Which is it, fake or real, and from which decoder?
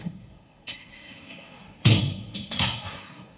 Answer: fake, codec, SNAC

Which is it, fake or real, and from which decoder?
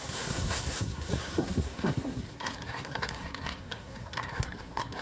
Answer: fake, codec, SNAC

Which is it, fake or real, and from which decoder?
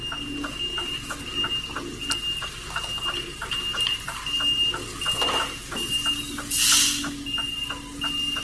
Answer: real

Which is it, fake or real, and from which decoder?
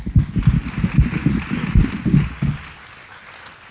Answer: real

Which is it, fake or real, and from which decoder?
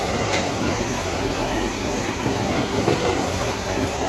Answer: fake, codec, SNAC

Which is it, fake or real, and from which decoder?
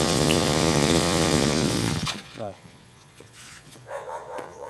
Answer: fake, vocoder, Vocos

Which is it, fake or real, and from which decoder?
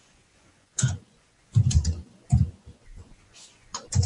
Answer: fake, vocoder, Vocos